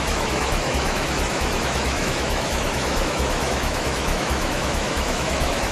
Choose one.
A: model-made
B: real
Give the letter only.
A